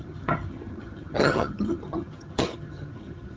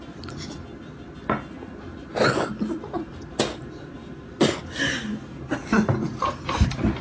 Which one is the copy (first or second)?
first